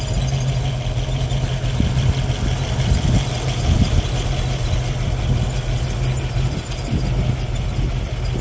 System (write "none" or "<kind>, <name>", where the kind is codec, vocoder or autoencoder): none